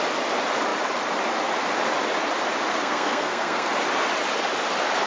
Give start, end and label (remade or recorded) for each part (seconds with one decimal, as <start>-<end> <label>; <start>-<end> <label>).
0.0-2.7 recorded; 2.7-3.7 remade; 3.7-5.1 recorded